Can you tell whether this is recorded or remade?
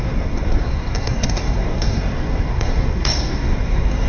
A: remade